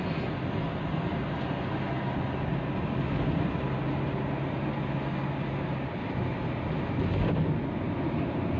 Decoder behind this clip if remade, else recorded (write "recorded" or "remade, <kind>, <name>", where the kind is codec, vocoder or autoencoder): recorded